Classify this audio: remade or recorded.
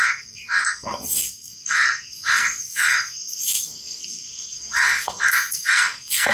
remade